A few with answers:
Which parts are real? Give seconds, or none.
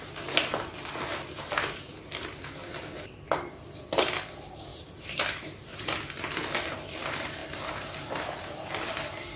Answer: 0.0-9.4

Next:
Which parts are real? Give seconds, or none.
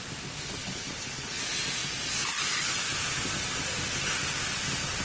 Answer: 0.0-0.6; 1.4-5.0